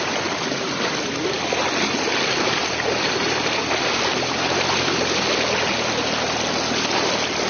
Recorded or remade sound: recorded